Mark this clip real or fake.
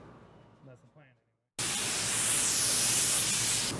real